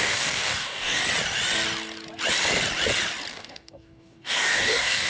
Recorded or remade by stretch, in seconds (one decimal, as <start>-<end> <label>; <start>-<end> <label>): 0.0-1.0 remade; 1.0-3.3 recorded; 3.3-5.1 remade